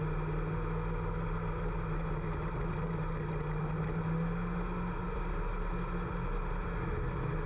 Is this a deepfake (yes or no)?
no